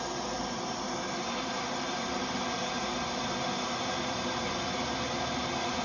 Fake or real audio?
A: real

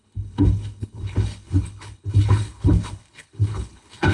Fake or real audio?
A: fake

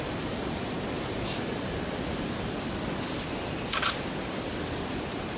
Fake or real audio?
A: real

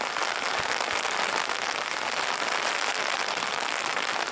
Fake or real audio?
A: real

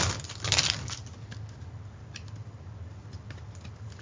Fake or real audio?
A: real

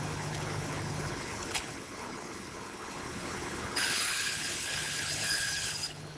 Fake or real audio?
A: fake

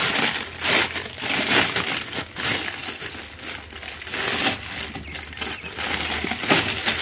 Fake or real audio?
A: real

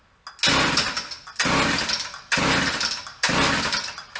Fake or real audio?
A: real